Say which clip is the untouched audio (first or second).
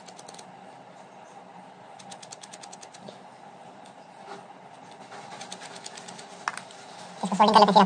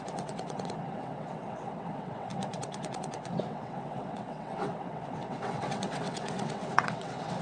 first